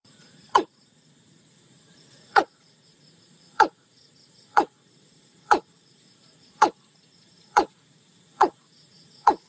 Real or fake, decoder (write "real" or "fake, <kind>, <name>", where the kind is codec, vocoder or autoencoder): fake, vocoder, Vocos